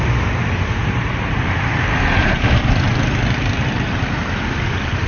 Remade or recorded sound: remade